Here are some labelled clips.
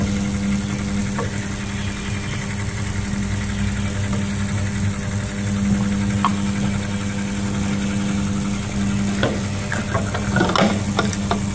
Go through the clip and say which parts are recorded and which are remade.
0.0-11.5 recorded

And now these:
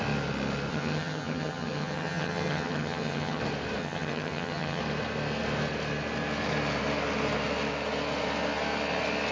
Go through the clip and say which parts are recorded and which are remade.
0.0-0.7 recorded; 0.7-3.4 remade; 3.4-3.8 recorded; 3.8-4.8 remade; 4.8-9.3 recorded

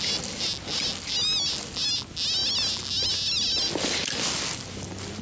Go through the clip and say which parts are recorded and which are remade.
0.0-5.2 recorded